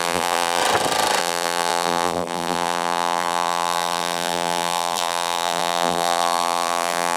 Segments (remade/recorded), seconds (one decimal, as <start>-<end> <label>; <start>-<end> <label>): 0.0-0.6 remade; 0.6-1.2 recorded; 1.2-7.2 remade

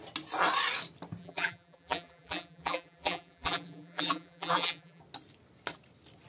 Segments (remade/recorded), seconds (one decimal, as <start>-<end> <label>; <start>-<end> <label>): 0.0-1.2 recorded; 1.2-5.0 remade; 5.0-6.3 recorded

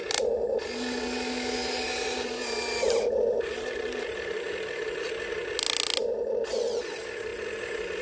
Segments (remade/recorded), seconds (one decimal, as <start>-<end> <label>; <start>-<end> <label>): 0.0-1.6 recorded; 1.6-5.3 remade; 5.3-8.0 recorded

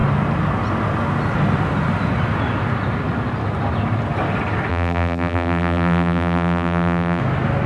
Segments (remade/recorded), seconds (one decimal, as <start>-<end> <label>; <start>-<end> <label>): 0.0-4.7 recorded; 4.7-7.2 remade; 7.2-7.7 recorded

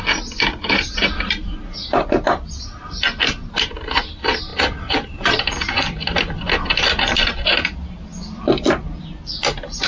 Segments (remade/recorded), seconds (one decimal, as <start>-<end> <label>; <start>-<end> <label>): 0.0-4.5 recorded; 4.5-5.4 remade; 5.4-9.9 recorded

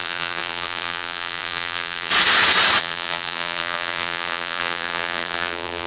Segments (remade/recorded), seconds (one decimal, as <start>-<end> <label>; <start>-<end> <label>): 0.0-2.1 remade; 2.1-2.8 recorded; 2.8-5.9 remade

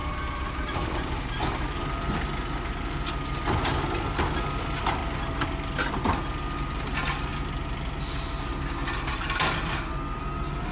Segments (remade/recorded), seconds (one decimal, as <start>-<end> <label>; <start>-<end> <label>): 0.0-1.8 remade; 1.8-10.7 recorded